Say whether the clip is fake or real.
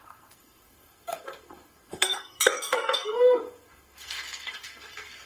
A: fake